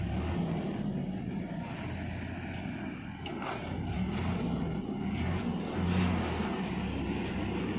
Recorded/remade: recorded